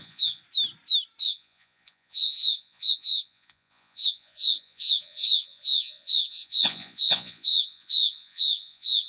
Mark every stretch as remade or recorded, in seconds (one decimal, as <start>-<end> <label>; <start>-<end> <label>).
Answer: 0.0-0.4 remade; 0.4-1.2 recorded; 1.2-9.1 remade